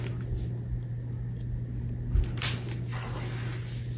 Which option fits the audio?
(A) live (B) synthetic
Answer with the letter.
A